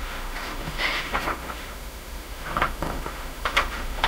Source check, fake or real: fake